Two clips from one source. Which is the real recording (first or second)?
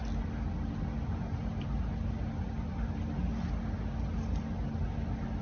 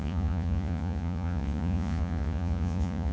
first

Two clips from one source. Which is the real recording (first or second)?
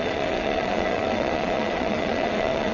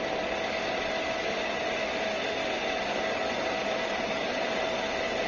second